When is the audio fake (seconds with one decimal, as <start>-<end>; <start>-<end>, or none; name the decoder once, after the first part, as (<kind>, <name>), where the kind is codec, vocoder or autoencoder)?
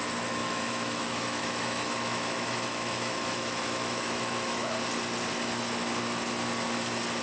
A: 0.4-4.7 (autoencoder, DAC-VAE)